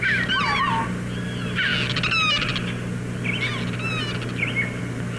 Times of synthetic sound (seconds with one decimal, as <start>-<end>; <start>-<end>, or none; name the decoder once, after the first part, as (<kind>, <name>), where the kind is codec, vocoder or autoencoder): none